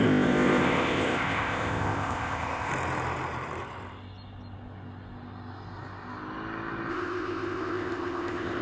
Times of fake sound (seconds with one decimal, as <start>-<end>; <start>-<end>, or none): 0.0-2.7; 6.9-8.6